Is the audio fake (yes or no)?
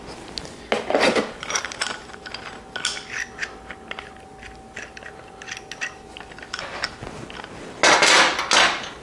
no